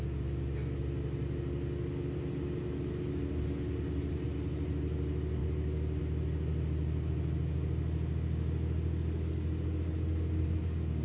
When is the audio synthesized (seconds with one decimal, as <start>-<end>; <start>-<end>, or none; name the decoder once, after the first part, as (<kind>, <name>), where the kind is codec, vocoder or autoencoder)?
none